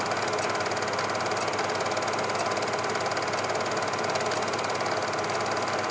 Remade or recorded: recorded